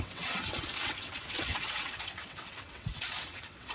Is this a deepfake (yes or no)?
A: yes